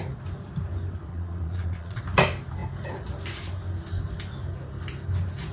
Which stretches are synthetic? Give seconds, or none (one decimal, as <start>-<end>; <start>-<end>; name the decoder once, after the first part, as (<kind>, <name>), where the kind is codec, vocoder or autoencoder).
1.1-2.0 (vocoder, Vocos)